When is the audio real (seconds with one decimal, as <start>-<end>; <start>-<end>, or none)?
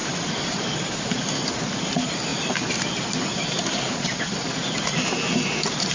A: 0.0-5.9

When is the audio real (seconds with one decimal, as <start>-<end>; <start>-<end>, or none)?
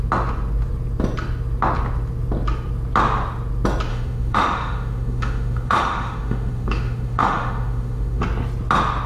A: 0.0-3.9; 8.2-9.1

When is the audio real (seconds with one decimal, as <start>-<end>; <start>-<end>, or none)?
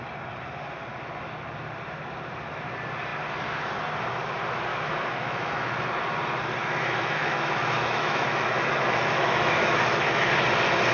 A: 0.0-4.7; 5.9-6.6; 10.3-10.9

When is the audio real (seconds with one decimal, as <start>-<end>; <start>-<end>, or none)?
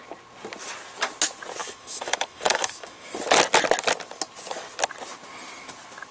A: 0.0-1.6; 3.1-6.1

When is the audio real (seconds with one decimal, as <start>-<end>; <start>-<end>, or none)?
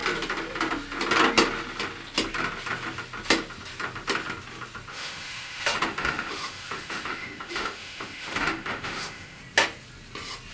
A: 0.0-4.9; 9.4-10.5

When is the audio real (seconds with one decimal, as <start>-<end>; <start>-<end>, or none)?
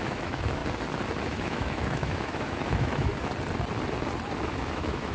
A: 0.6-1.1; 3.1-4.4